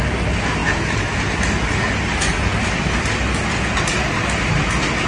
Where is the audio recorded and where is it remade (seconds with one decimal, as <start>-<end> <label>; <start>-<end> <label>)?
0.0-5.1 recorded

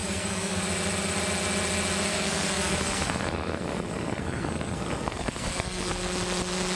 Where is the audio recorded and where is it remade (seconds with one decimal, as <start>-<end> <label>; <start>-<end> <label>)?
0.0-0.6 remade; 0.6-2.1 recorded; 2.1-5.9 remade; 5.9-6.8 recorded

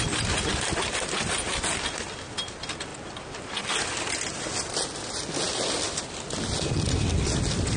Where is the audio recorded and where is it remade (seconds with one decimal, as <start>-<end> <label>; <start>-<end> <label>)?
0.0-7.8 recorded

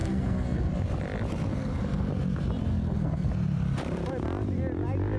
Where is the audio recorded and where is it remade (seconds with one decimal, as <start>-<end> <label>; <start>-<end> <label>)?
0.0-0.7 remade; 0.7-1.5 recorded; 1.5-2.1 remade; 2.1-2.7 recorded; 2.7-3.3 remade; 3.3-5.2 recorded

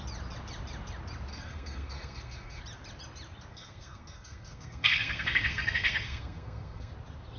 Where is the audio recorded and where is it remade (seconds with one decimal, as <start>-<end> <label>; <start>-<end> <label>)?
0.0-1.3 recorded; 1.3-2.6 remade; 2.6-3.5 recorded; 3.5-6.9 remade; 6.9-7.4 recorded

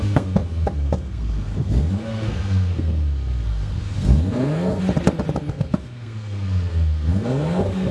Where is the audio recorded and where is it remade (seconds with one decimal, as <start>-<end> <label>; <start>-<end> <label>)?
0.0-4.8 remade; 4.8-5.5 recorded; 5.5-7.9 remade

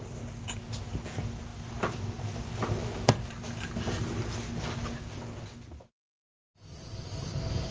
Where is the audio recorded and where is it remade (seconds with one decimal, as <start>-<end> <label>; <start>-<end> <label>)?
0.0-7.7 recorded